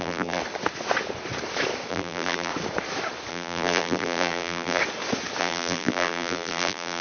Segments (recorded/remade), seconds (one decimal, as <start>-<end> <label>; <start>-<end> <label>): 0.0-0.4 remade; 0.4-1.9 recorded; 1.9-2.5 remade; 2.5-3.3 recorded; 3.3-4.8 remade; 4.8-5.4 recorded; 5.4-7.0 remade